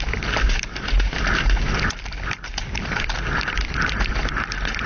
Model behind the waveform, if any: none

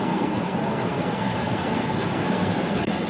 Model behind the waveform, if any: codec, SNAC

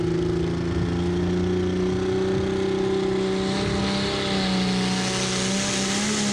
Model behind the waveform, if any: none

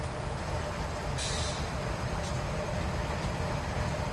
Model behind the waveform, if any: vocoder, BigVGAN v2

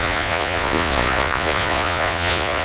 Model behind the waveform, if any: vocoder, Vocos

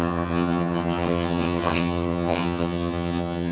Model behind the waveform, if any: vocoder, HiFi-GAN